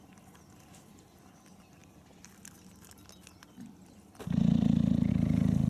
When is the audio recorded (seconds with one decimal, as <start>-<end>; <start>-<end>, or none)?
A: 0.0-5.7